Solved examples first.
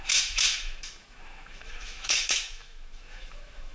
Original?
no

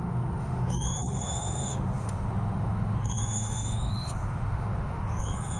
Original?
no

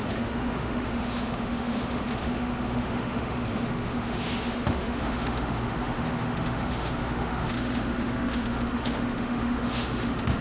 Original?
no